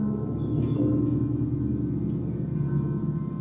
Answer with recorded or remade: recorded